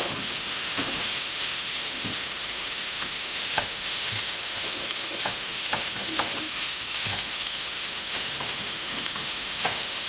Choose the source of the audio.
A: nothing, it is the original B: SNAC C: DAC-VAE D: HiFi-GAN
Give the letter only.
C